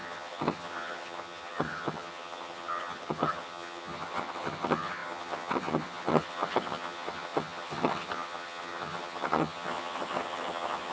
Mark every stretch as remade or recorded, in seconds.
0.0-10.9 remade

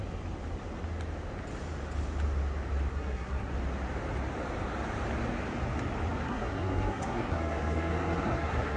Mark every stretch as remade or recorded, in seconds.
0.0-2.9 recorded; 2.9-3.5 remade; 3.5-6.2 recorded; 6.2-8.8 remade

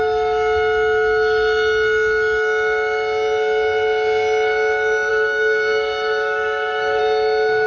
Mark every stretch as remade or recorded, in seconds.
0.0-5.1 recorded; 5.1-7.0 remade; 7.0-7.7 recorded

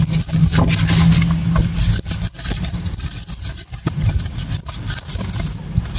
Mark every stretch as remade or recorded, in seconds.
0.0-6.0 recorded

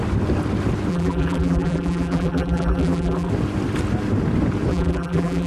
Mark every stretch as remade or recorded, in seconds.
0.0-0.9 recorded; 0.9-3.3 remade; 3.3-4.7 recorded; 4.7-5.5 remade

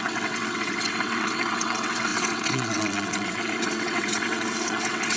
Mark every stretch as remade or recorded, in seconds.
0.0-5.2 remade

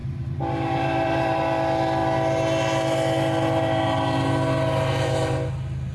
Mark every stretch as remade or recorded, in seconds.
0.0-1.4 remade; 1.4-5.9 recorded